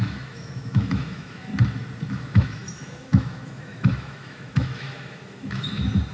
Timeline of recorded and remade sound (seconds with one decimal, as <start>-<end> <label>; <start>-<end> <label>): 0.0-1.5 remade; 1.5-2.1 recorded; 2.1-6.1 remade